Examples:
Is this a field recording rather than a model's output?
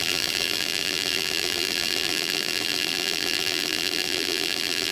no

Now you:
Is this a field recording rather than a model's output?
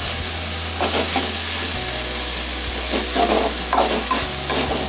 yes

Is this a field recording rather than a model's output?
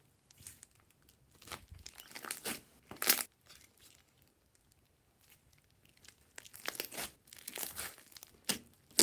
yes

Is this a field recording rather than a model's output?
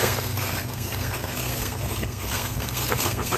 no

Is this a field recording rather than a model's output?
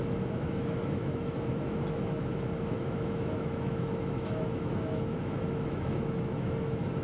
no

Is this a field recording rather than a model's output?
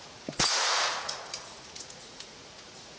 no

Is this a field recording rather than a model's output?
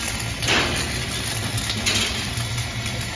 yes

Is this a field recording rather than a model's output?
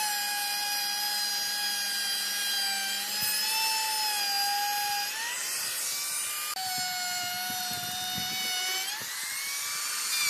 yes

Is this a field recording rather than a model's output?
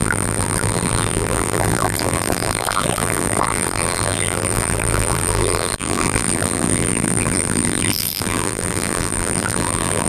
no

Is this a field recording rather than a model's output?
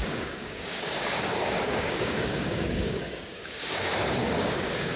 no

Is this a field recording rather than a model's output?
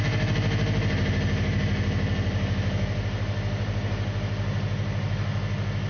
yes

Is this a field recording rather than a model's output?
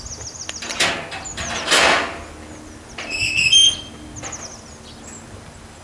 yes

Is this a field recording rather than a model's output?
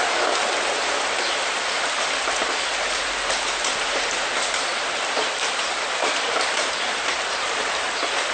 no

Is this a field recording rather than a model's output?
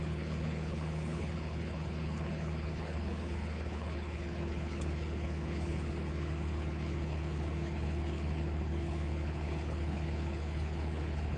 no